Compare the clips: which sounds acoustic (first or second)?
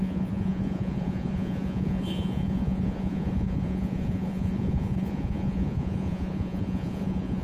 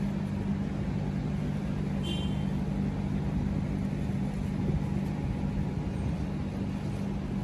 second